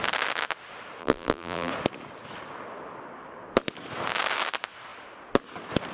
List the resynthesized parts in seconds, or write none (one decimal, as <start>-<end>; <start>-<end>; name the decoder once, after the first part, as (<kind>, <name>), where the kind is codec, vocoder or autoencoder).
1.0-1.7 (vocoder, BigVGAN v2)